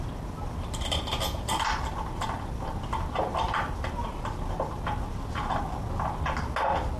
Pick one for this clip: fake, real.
real